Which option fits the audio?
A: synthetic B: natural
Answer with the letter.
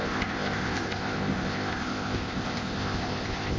A